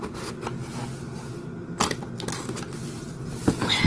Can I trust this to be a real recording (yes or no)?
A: yes